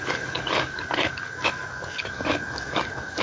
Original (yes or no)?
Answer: no